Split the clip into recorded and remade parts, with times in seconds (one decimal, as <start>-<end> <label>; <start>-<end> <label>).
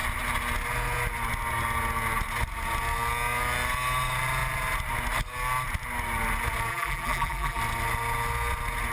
0.0-6.7 recorded; 6.7-7.6 remade; 7.6-8.9 recorded